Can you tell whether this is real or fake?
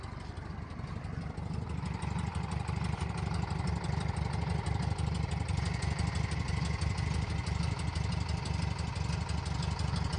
real